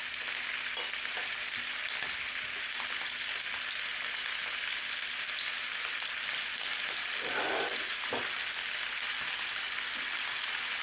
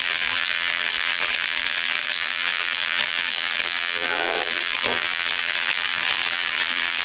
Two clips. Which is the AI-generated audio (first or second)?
second